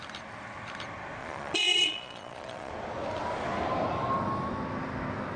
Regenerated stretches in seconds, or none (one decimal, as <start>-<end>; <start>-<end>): 1.2-2.7